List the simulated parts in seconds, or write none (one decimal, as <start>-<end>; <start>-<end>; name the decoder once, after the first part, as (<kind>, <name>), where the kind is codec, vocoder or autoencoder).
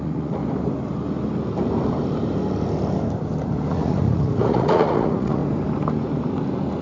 0.0-0.4 (vocoder, Vocos); 3.7-5.4